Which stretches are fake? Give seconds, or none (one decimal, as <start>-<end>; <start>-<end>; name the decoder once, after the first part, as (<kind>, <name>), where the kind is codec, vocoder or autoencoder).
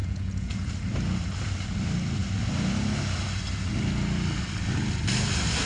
0.0-0.7 (vocoder, Vocos)